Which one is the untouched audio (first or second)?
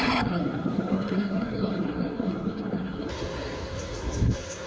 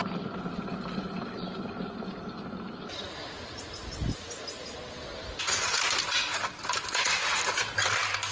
second